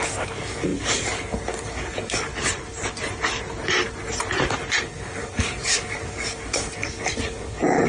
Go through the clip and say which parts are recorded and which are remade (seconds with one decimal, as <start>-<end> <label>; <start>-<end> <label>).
0.0-2.3 remade; 2.3-4.8 recorded; 4.8-7.9 remade

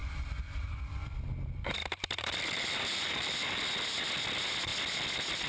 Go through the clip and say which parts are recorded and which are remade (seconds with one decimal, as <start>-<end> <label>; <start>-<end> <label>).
0.0-1.3 remade; 1.3-1.8 recorded; 1.8-3.6 remade; 3.6-5.5 recorded

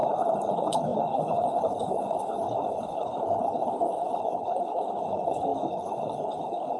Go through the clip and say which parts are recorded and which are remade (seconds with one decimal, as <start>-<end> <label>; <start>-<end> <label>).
0.0-6.8 remade

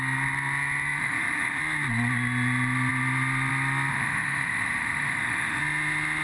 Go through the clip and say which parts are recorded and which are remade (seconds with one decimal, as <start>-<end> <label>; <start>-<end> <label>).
0.0-1.0 recorded; 1.0-1.6 remade; 1.6-3.9 recorded; 3.9-5.6 remade; 5.6-6.2 recorded